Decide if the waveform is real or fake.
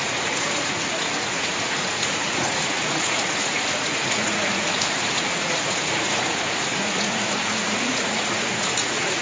fake